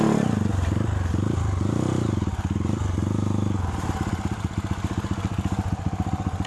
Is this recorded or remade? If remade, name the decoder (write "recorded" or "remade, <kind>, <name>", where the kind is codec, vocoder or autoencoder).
recorded